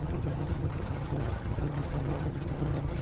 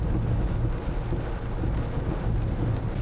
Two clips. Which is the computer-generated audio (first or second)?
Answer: first